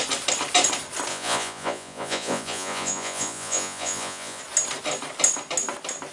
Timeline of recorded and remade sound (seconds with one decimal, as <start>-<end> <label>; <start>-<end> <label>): 0.0-1.1 recorded; 1.1-4.4 remade; 4.4-6.1 recorded